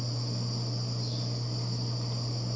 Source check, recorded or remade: recorded